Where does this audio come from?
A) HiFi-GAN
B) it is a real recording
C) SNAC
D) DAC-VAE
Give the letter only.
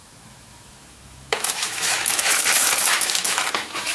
D